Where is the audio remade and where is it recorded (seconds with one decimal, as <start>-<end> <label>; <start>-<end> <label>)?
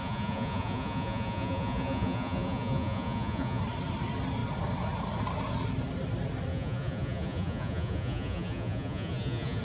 0.0-3.6 remade; 3.6-6.5 recorded; 6.5-9.6 remade